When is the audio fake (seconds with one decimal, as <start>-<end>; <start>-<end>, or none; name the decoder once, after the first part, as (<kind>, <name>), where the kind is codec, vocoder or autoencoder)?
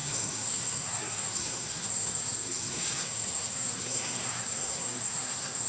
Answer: 0.0-5.7 (codec, SNAC)